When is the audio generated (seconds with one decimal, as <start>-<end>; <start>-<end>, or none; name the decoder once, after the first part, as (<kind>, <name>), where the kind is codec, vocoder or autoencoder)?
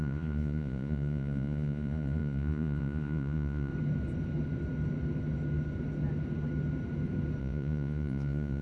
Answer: 0.0-3.7 (vocoder, Vocos); 7.4-8.6